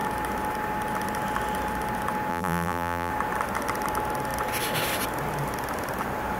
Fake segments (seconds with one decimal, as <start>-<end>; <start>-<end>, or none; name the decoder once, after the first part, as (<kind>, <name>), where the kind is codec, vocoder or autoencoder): 2.3-3.1 (vocoder, BigVGAN v2)